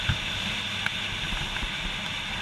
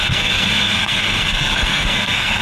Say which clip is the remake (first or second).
second